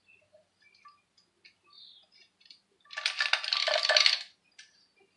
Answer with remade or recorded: recorded